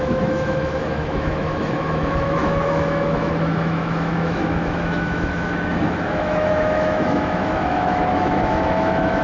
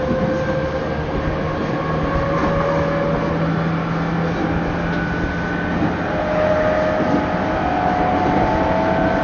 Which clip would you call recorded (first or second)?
second